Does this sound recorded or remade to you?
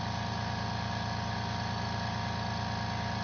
recorded